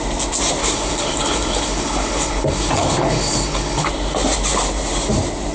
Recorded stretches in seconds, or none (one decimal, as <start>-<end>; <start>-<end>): 0.0-0.6; 3.9-5.5

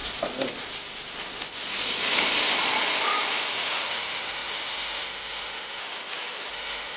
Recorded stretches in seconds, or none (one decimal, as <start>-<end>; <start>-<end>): 0.0-3.5; 5.8-6.5

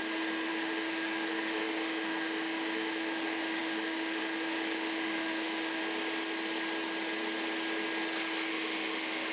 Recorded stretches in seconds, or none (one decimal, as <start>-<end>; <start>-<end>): 0.0-0.5; 5.8-8.5

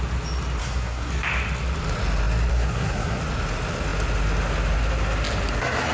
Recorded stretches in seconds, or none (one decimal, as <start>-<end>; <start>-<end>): 0.0-0.6; 1.1-2.5; 3.2-5.9

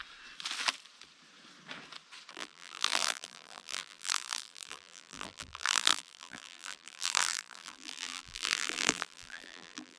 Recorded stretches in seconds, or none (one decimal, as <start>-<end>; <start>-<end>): 0.0-2.3

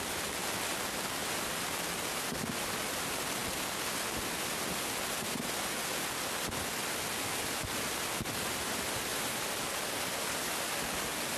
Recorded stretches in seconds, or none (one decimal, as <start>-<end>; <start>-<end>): 0.0-1.2; 1.9-9.1; 10.2-11.4